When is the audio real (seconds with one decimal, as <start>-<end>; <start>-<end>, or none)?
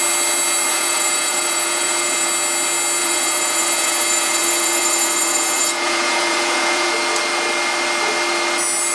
0.0-0.7; 2.3-3.0; 6.9-8.9